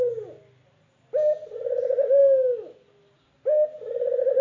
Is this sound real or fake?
real